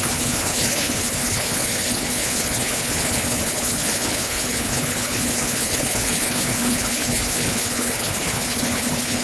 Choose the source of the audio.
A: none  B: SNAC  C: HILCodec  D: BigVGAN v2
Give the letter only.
C